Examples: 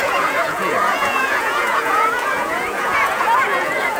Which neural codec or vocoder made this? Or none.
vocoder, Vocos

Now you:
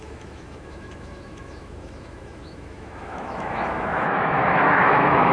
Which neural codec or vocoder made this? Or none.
autoencoder, DAC-VAE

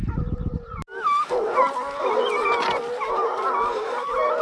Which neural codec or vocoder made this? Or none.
none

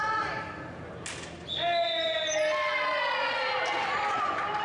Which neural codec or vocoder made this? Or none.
none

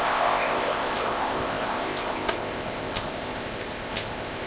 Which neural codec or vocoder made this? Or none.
codec, ZipCodec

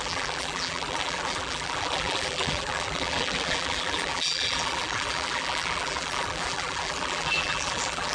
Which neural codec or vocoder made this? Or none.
vocoder, BigVGAN v2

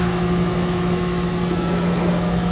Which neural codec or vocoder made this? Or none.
autoencoder, DAC-VAE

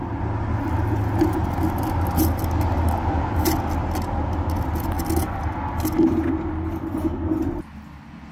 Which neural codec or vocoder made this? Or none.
none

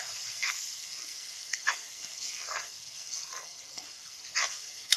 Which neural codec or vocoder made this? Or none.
codec, SNAC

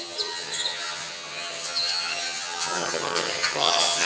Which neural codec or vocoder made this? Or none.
vocoder, HiFi-GAN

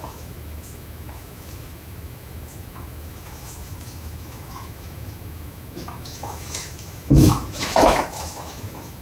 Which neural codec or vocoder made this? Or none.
autoencoder, DAC-VAE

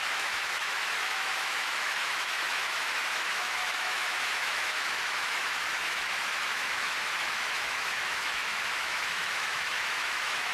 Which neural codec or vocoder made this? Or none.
autoencoder, DAC-VAE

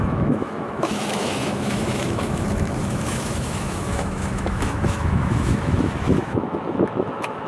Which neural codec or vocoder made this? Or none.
autoencoder, DAC-VAE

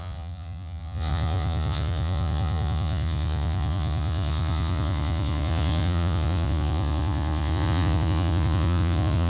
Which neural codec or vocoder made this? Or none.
vocoder, Vocos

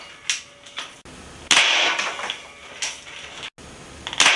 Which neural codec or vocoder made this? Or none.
none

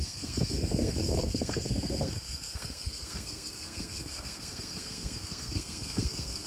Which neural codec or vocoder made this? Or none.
codec, SNAC